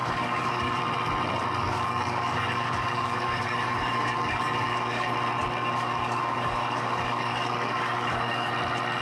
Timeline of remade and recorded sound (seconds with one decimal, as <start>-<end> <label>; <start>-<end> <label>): 0.0-0.8 remade; 0.8-1.6 recorded; 1.6-5.1 remade; 5.1-5.6 recorded; 5.6-8.5 remade; 8.5-9.0 recorded